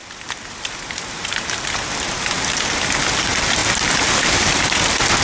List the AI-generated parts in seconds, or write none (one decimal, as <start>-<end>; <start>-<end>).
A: none

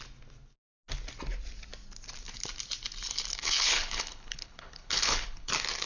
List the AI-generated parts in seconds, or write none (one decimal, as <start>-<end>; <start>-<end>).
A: 3.3-5.5

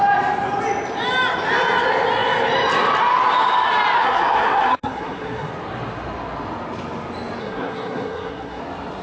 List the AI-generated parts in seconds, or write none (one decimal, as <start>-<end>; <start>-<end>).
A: 4.0-5.5; 7.4-8.6

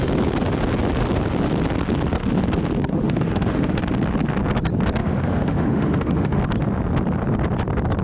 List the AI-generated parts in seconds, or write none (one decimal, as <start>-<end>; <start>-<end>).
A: 2.9-3.8; 5.0-6.4

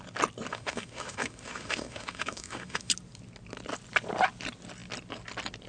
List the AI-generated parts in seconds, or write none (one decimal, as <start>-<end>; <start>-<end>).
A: 0.5-2.9

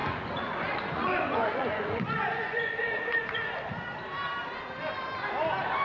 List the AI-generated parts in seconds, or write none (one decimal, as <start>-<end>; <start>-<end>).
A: 0.0-3.5